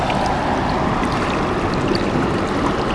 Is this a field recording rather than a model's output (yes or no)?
yes